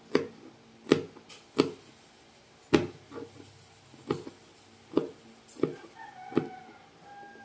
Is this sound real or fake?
real